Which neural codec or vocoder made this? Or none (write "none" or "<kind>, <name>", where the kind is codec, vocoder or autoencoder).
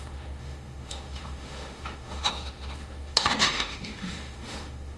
autoencoder, DAC-VAE